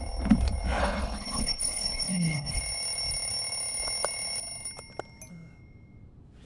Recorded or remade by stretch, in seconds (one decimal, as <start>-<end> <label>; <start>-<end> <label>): 0.0-0.8 recorded; 0.8-2.6 remade; 2.6-6.5 recorded